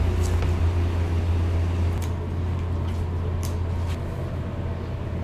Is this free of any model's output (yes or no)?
yes